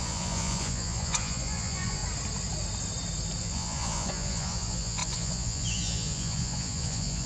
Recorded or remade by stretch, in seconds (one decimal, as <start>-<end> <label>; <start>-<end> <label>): 0.0-2.0 remade; 2.0-3.4 recorded; 3.4-7.3 remade